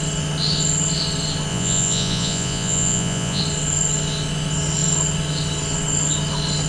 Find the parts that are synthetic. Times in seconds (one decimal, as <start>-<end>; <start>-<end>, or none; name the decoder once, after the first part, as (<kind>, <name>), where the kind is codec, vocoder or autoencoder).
1.5-3.4 (vocoder, Vocos)